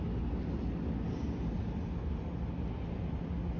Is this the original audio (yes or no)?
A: yes